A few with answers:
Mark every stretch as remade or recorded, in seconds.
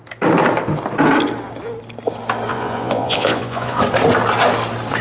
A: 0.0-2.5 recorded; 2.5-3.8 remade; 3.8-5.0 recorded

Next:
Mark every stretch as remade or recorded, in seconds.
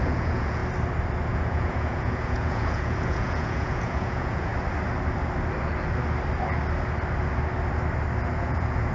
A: 0.0-0.6 remade; 0.6-1.3 recorded; 1.3-4.5 remade; 4.5-8.2 recorded; 8.2-8.9 remade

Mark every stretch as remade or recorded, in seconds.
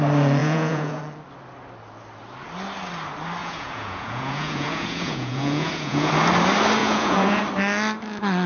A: 0.0-0.4 recorded; 0.4-1.0 remade; 1.0-3.4 recorded; 3.4-6.1 remade; 6.1-6.8 recorded; 6.8-7.4 remade; 7.4-8.5 recorded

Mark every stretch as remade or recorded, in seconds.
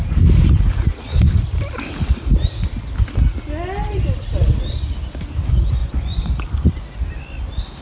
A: 0.0-5.8 recorded; 5.8-6.3 remade; 6.3-7.8 recorded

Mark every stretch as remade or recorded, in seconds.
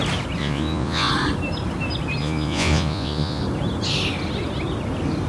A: 0.0-0.4 recorded; 0.4-1.1 remade; 1.1-2.2 recorded; 2.2-3.4 remade; 3.4-5.3 recorded